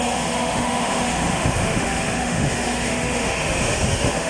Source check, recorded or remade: remade